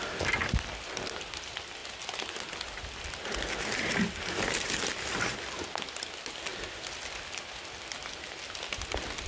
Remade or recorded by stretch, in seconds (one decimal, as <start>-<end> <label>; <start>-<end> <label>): 0.0-9.3 recorded